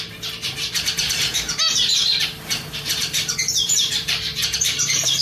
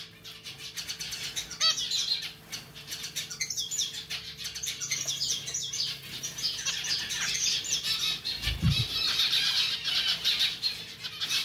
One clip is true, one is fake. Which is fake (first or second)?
first